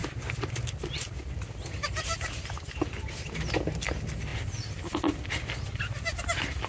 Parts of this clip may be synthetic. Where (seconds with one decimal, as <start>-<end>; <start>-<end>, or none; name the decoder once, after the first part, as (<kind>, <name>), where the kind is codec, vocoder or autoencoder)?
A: none

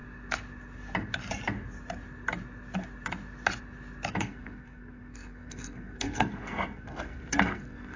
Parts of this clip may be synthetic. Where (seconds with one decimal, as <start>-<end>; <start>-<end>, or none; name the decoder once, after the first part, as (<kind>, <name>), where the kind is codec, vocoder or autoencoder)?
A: 4.1-8.0 (codec, SNAC)

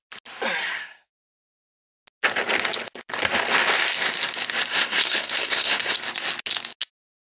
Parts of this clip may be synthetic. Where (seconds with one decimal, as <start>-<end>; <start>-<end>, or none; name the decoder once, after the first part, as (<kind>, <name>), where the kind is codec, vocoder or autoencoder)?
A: 0.6-1.2 (codec, SNAC); 4.7-6.0

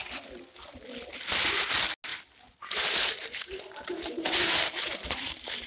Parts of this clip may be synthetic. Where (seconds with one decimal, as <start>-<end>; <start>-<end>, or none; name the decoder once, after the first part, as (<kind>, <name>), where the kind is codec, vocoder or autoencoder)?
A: 2.1-5.7 (vocoder, BigVGAN v2)

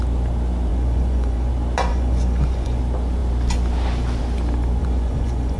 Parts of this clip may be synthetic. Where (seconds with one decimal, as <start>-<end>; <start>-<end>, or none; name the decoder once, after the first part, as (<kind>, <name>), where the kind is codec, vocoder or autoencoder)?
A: 0.7-1.5 (vocoder, Vocos); 1.9-2.8; 4.8-5.6

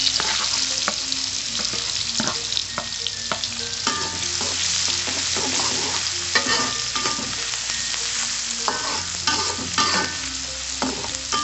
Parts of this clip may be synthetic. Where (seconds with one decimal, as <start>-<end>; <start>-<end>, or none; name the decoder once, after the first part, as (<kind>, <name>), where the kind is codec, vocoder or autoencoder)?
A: none

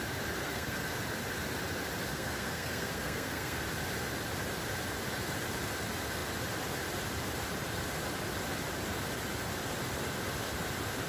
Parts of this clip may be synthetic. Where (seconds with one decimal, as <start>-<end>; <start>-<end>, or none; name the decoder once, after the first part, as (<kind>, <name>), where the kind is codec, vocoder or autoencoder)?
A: 0.4-0.9 (codec, SNAC); 2.1-3.6

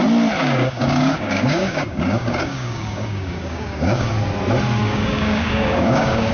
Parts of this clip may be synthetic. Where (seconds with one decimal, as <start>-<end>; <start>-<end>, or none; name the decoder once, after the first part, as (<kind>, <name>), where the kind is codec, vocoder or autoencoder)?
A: 0.4-4.1 (codec, DAC); 4.8-6.3